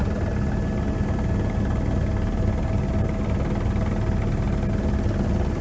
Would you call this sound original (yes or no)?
yes